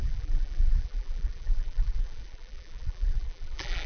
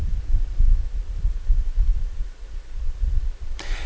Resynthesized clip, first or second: first